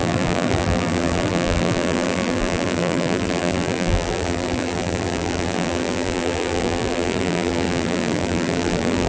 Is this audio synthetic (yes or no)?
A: yes